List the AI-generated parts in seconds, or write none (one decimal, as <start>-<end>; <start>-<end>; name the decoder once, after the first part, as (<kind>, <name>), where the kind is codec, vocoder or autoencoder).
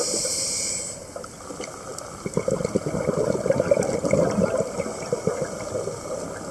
none